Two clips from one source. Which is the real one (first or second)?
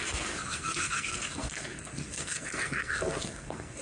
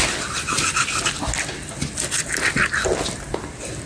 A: second